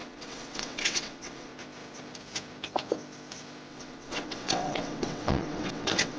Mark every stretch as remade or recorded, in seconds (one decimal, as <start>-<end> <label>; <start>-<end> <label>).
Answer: 0.0-1.5 remade; 1.5-3.7 recorded; 3.7-6.2 remade

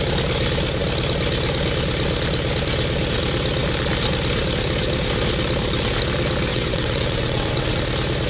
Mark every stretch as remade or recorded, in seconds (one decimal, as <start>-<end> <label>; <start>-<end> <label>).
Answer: 0.0-6.5 recorded; 6.5-7.8 remade; 7.8-8.3 recorded

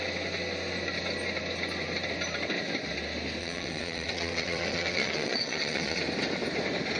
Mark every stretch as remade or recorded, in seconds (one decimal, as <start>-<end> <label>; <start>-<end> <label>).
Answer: 0.0-3.4 recorded; 3.4-6.0 remade; 6.0-7.0 recorded

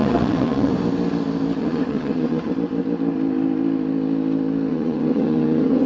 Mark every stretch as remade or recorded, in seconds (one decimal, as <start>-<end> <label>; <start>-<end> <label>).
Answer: 0.0-0.7 remade; 0.7-1.6 recorded; 1.6-2.5 remade; 2.5-4.7 recorded; 4.7-5.9 remade

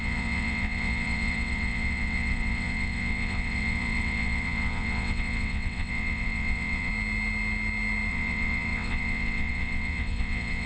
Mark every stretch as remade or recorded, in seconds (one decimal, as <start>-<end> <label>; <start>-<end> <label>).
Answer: 0.0-6.9 remade; 6.9-8.1 recorded; 8.1-10.7 remade

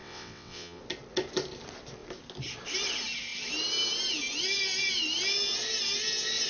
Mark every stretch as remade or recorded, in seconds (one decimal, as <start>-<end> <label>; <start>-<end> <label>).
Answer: 0.0-0.8 remade; 0.8-6.5 recorded